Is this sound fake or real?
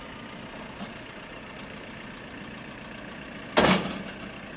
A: fake